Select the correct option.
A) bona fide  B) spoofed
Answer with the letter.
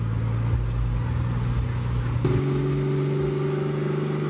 A